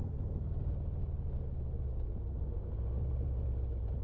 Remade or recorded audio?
recorded